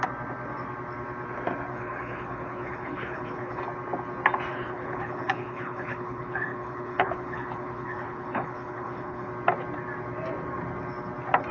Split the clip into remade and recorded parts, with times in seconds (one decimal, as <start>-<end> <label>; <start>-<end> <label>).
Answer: 0.0-1.7 recorded; 1.7-3.6 remade; 3.6-4.5 recorded; 4.5-9.3 remade; 9.3-11.5 recorded